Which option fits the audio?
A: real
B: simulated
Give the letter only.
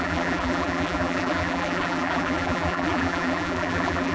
B